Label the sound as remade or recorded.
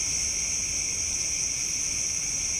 recorded